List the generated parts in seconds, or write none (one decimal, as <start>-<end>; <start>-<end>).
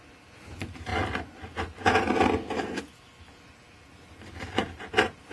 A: none